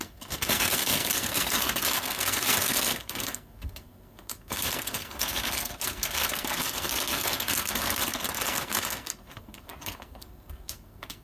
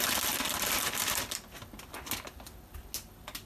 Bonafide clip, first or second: second